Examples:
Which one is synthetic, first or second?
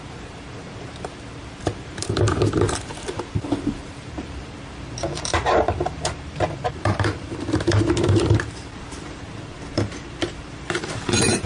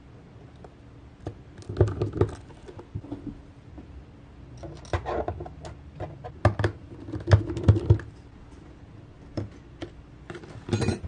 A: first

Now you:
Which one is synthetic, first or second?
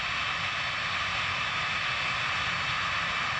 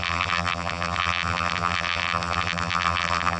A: second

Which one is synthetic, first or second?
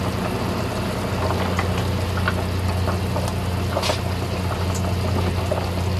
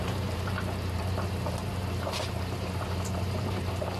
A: second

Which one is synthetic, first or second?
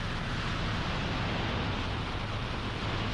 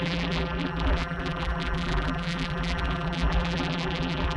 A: second